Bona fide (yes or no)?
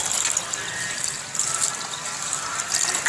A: yes